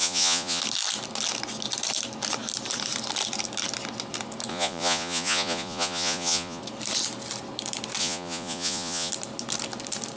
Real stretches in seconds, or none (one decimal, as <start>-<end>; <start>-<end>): 0.6-4.5; 6.6-8.0; 9.1-10.2